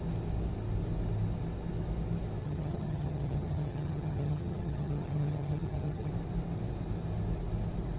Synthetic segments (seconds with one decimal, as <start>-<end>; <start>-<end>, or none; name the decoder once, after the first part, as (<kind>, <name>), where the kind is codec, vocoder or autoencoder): 2.4-6.1 (vocoder, HiFi-GAN)